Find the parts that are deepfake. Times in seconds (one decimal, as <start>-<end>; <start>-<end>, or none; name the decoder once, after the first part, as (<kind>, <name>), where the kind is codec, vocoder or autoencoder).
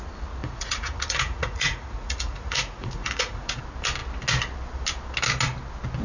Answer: 0.4-3.6 (vocoder, Vocos)